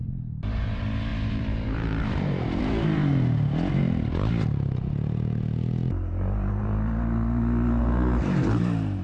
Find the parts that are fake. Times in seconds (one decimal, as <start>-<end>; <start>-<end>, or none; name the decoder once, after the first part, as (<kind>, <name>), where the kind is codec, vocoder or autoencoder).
0.0-3.1 (vocoder, BigVGAN v2); 7.8-9.0

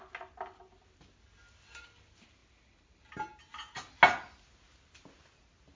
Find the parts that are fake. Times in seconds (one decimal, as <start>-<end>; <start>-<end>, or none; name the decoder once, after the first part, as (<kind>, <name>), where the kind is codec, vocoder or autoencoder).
none

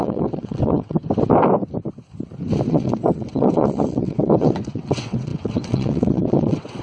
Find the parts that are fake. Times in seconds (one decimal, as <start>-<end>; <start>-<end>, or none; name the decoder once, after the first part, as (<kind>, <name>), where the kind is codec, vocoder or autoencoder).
0.0-1.0 (vocoder, WaveNeXt); 2.7-6.8

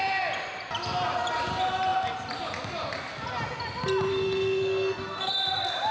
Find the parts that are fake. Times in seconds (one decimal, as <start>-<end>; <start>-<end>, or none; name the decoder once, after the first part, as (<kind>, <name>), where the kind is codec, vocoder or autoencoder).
4.1-5.3 (codec, SNAC)

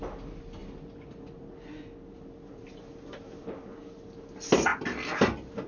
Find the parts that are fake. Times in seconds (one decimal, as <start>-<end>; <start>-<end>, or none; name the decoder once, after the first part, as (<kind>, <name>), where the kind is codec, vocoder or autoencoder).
none

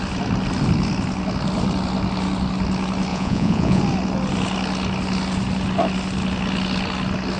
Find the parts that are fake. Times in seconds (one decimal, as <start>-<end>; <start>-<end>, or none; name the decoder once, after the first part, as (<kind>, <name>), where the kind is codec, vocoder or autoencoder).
3.1-3.8 (vocoder, Vocos)